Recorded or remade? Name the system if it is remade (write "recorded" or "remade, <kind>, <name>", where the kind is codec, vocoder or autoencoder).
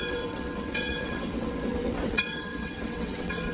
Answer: remade, vocoder, WaveNeXt